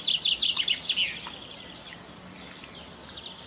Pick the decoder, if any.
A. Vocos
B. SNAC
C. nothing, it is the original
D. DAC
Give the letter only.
C